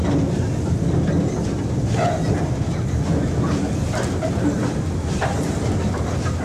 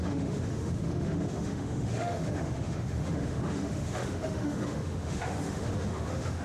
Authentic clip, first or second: first